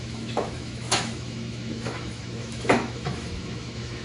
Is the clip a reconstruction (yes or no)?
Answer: yes